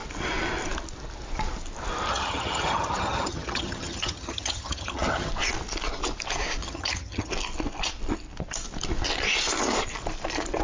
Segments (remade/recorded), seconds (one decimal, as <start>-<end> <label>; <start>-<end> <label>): 0.0-2.1 recorded; 2.1-5.3 remade; 5.3-6.6 recorded; 6.6-7.3 remade; 7.3-10.6 recorded